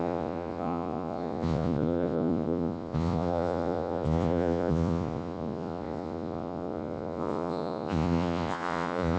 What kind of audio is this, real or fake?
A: fake